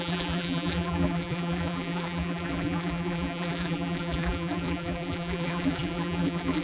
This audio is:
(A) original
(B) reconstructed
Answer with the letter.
B